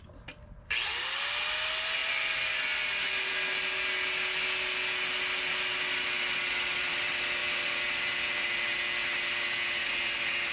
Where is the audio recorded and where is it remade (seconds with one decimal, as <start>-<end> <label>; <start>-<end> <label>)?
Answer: 0.0-10.5 recorded